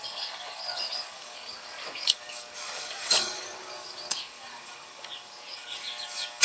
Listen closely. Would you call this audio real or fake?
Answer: fake